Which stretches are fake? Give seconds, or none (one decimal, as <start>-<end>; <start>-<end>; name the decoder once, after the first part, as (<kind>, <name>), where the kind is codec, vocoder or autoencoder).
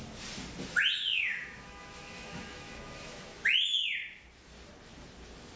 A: 1.1-3.4 (autoencoder, DAC-VAE)